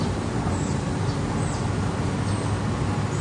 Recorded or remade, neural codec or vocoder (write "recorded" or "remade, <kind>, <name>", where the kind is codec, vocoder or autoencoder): recorded